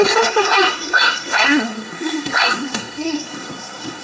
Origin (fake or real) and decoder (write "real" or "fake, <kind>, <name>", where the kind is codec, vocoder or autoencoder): fake, codec, SNAC